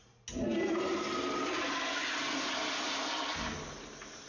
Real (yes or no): yes